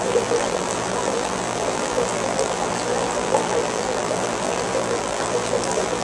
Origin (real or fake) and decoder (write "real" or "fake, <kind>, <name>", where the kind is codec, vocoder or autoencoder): fake, vocoder, BigVGAN v2